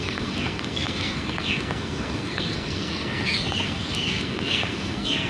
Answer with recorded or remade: remade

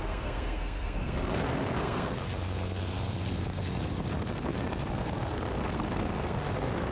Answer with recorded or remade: remade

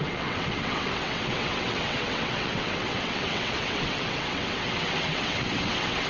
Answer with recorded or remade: remade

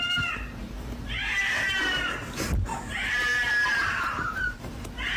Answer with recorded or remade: remade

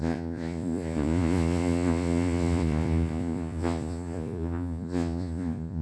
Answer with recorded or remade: remade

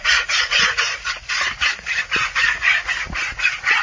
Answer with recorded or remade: remade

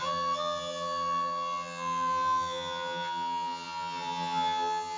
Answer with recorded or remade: remade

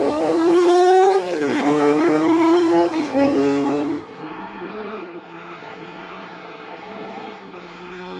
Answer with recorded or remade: remade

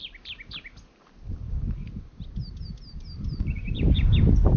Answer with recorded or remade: recorded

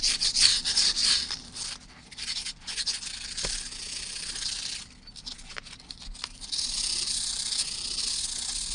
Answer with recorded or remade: remade